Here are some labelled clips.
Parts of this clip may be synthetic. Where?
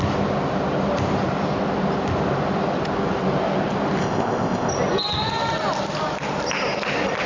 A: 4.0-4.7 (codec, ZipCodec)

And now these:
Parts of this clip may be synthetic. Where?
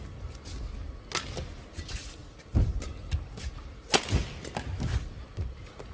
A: none